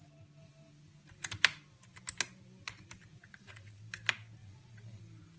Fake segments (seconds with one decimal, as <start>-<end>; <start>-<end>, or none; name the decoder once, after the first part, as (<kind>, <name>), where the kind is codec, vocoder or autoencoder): 3.3-3.8 (vocoder, Vocos); 4.4-5.0

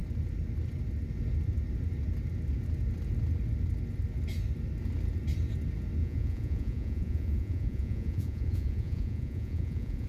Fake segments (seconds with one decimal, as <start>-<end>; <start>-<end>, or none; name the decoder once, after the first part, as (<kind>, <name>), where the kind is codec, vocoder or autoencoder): 6.0-10.1 (vocoder, Vocos)

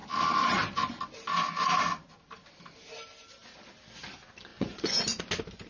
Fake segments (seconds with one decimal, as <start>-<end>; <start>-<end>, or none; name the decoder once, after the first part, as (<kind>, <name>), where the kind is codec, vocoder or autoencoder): 4.5-5.2 (vocoder, Vocos)

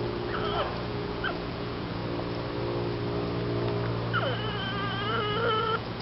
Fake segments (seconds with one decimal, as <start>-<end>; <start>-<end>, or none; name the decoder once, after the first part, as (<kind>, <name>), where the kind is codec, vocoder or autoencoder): 0.0-2.0 (vocoder, Vocos); 5.6-6.0

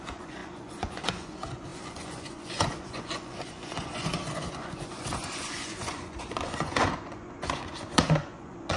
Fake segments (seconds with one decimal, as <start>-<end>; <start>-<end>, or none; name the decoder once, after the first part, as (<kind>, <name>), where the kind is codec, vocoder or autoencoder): 0.0-8.8 (vocoder, Vocos)

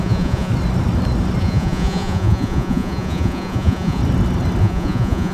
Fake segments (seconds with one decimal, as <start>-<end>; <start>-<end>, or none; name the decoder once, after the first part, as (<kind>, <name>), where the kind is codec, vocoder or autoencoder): 0.0-0.5 (vocoder, Vocos); 1.4-4.0; 4.6-5.3

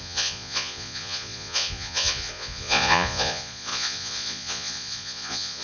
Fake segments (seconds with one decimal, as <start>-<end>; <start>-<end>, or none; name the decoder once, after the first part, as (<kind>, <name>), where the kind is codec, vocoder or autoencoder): 0.0-5.6 (vocoder, Vocos)